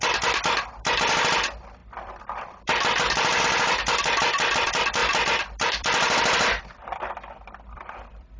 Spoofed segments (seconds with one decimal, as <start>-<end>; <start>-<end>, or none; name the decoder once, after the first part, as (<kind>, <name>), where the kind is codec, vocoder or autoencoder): 0.0-8.4 (vocoder, BigVGAN v2)